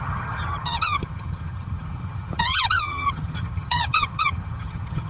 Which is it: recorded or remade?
remade